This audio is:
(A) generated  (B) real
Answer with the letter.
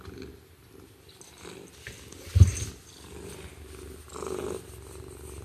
B